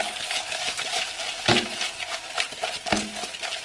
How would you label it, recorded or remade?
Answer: recorded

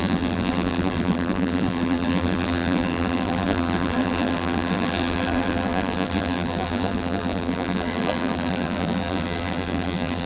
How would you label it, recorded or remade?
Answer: remade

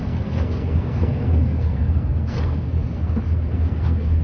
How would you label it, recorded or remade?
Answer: remade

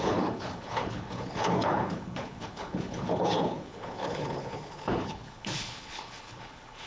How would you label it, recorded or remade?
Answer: remade